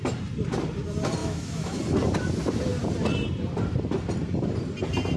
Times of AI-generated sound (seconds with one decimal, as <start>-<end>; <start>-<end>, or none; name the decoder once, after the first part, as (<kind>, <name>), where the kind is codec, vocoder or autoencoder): 1.2-1.8 (autoencoder, DAC-VAE)